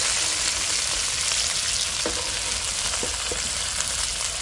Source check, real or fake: real